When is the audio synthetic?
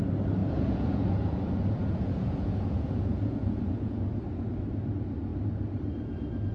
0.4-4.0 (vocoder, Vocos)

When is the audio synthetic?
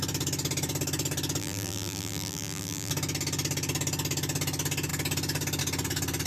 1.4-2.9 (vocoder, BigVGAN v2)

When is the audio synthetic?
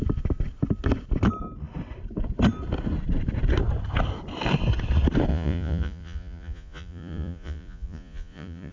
5.3-8.7 (vocoder, Vocos)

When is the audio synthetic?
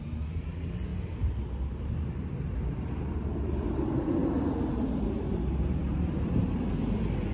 0.0-0.9 (vocoder, BigVGAN v2); 1.8-4.2; 4.7-7.3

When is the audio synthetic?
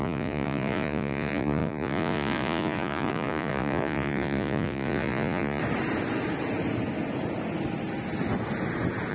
0.0-5.6 (vocoder, Vocos)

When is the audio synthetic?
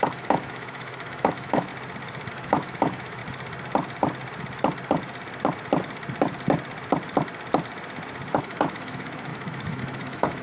0.0-1.7 (autoencoder, DAC-VAE); 2.3-3.2; 8.4-10.4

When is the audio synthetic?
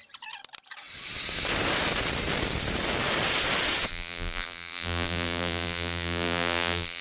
3.9-7.0 (vocoder, BigVGAN v2)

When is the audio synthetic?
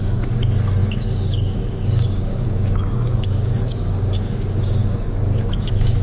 0.0-6.0 (codec, DAC)